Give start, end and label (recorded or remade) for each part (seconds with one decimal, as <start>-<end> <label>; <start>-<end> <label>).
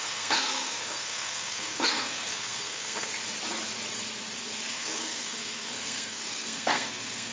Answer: 0.0-3.1 remade; 3.1-4.7 recorded; 4.7-7.3 remade